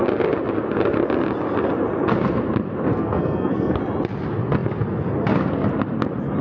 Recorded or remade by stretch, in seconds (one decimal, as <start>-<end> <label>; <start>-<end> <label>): 0.0-2.9 recorded; 2.9-3.8 remade; 3.8-6.4 recorded